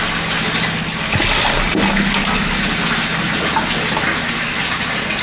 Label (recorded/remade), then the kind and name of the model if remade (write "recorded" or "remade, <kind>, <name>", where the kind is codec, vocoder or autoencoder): recorded